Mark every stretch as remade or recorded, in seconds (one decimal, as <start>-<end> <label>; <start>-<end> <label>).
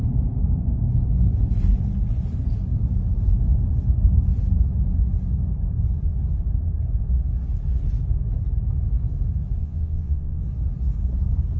0.0-9.6 recorded; 9.6-10.4 remade; 10.4-11.6 recorded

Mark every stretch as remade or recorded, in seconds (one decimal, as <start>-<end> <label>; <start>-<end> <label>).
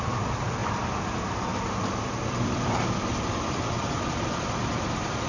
0.0-5.3 remade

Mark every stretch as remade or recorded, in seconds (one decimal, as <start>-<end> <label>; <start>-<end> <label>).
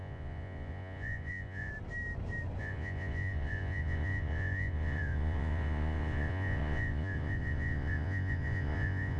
0.0-1.7 remade; 1.7-2.6 recorded; 2.6-9.2 remade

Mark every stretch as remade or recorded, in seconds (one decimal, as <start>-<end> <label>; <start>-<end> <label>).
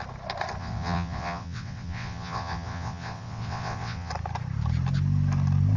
0.0-0.6 recorded; 0.6-4.1 remade; 4.1-5.8 recorded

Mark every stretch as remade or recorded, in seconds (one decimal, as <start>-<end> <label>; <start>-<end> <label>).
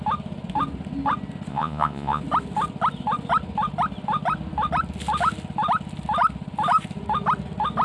0.0-1.5 recorded; 1.5-2.2 remade; 2.2-7.8 recorded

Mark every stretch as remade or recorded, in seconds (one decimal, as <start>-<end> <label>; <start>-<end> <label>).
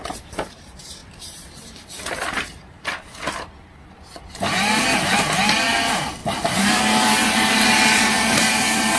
0.0-1.0 recorded; 1.0-2.1 remade; 2.1-6.2 recorded; 6.2-6.8 remade; 6.8-9.0 recorded